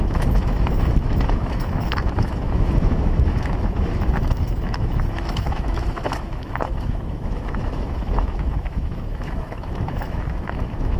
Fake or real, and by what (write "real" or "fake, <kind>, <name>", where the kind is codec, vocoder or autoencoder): fake, autoencoder, DAC-VAE